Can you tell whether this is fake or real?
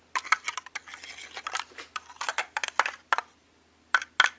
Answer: real